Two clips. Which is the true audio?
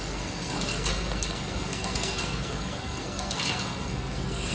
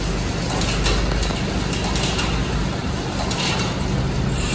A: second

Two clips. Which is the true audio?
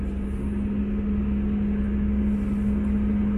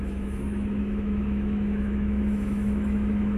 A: first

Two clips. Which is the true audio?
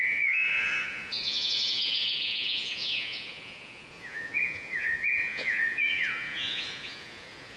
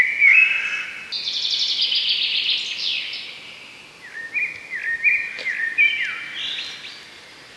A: second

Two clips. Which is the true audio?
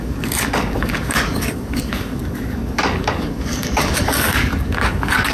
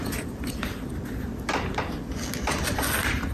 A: second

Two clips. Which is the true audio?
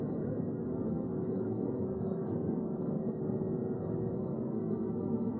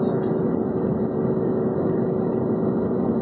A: second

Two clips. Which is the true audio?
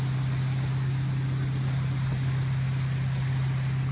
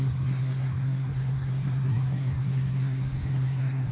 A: first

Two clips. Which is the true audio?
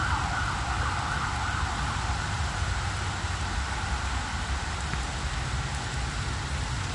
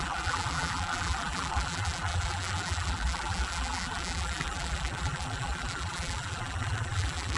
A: first